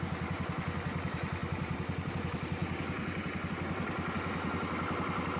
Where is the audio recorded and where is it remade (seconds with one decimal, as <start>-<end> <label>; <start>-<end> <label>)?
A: 0.0-1.4 recorded; 1.4-2.1 remade; 2.1-5.4 recorded

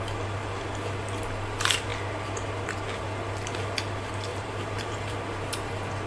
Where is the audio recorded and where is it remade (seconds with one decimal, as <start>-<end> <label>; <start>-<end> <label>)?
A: 0.0-4.3 recorded; 4.3-5.3 remade; 5.3-6.1 recorded

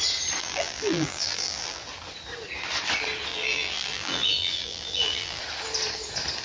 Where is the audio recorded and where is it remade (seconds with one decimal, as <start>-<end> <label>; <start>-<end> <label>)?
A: 0.0-0.4 recorded; 0.4-1.8 remade; 1.8-3.3 recorded; 3.3-5.4 remade; 5.4-6.4 recorded

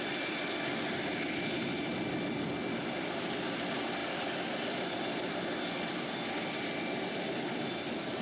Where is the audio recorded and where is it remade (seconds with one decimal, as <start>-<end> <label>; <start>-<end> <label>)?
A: 0.0-8.2 recorded

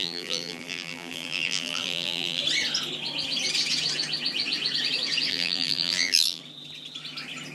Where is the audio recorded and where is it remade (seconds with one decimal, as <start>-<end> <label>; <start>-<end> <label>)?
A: 0.0-2.4 remade; 2.4-5.3 recorded; 5.3-6.4 remade; 6.4-7.5 recorded

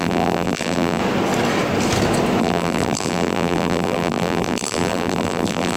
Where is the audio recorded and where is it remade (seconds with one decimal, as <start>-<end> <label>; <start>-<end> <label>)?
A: 0.0-1.0 remade; 1.0-2.4 recorded; 2.4-5.8 remade